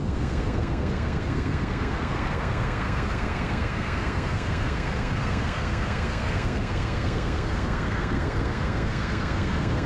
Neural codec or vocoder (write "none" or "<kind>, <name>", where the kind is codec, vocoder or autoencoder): codec, SNAC